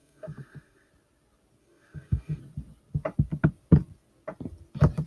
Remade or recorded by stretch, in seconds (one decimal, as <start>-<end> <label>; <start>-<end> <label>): 0.0-0.9 remade; 0.9-1.6 recorded; 1.6-2.4 remade; 2.4-5.1 recorded